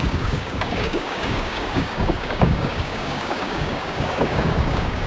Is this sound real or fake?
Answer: fake